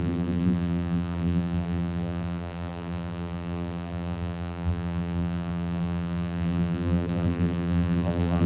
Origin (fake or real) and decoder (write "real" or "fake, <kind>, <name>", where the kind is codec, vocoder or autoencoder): fake, vocoder, BigVGAN v2